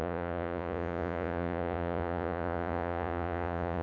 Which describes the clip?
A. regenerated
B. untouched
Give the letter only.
A